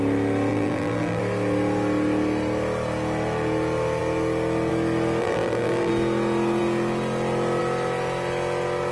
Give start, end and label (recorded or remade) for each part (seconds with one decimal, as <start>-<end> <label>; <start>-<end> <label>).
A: 0.0-0.5 recorded; 0.5-1.2 remade; 1.2-5.2 recorded; 5.2-5.9 remade; 5.9-8.9 recorded